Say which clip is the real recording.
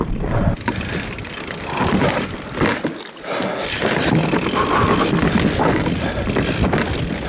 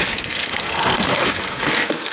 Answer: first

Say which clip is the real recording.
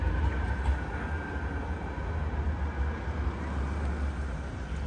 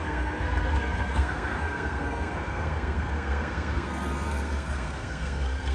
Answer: first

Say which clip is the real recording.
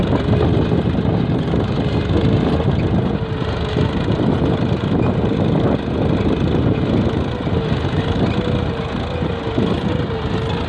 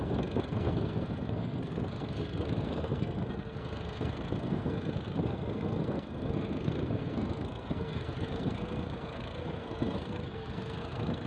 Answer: first